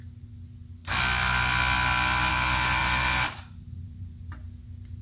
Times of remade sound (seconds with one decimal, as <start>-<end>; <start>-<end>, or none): none